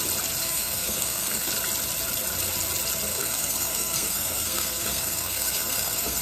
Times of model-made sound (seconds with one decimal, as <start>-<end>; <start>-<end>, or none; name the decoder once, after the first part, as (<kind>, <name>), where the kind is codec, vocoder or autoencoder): 0.4-1.5 (codec, SNAC); 3.1-6.2